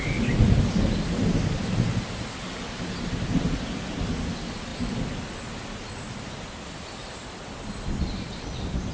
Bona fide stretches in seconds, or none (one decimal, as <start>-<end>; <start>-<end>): 0.0-8.9